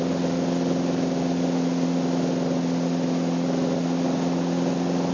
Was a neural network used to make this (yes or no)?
no